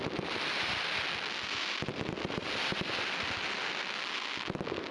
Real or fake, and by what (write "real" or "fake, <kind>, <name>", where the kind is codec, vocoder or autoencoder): real